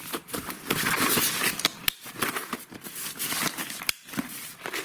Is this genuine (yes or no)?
yes